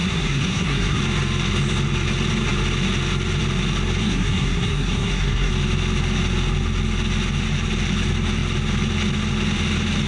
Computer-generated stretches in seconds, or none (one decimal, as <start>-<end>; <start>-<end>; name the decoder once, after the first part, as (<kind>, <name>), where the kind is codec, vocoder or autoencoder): 0.0-1.0 (codec, SNAC); 4.0-5.5